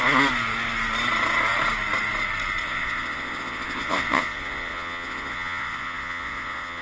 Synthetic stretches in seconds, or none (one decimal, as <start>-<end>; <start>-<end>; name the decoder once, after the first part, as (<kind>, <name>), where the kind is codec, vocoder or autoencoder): 2.6-6.8 (vocoder, Vocos)